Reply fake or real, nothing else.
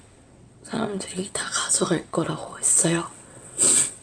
fake